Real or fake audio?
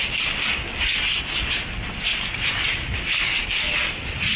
real